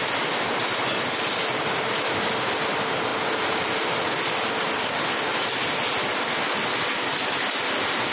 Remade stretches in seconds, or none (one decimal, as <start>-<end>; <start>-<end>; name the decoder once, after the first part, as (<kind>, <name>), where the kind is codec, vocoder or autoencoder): none